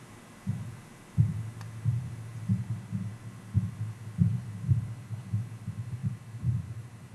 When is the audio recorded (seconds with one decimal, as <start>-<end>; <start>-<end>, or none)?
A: 0.0-7.1